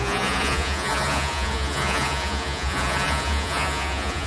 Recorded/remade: remade